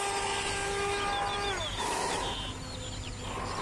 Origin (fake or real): real